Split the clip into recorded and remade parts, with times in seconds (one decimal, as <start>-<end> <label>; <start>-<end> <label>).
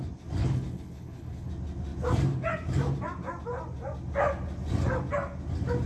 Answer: 0.0-0.4 recorded; 0.4-1.5 remade; 1.5-5.9 recorded